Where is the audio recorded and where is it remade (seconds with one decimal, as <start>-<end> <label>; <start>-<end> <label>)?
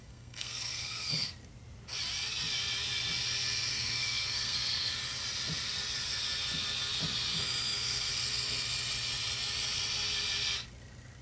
0.0-1.3 remade; 1.3-3.7 recorded; 3.7-4.9 remade; 4.9-7.3 recorded; 7.3-8.1 remade; 8.1-11.2 recorded